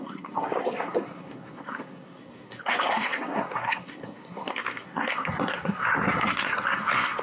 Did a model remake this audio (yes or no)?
yes